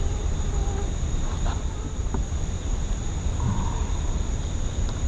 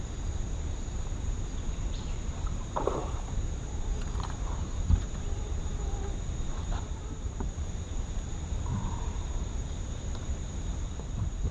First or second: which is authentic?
first